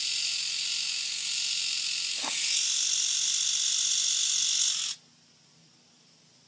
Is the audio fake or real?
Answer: real